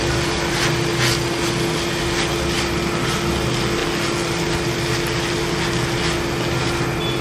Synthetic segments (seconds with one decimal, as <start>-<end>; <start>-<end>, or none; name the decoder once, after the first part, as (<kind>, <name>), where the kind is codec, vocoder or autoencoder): none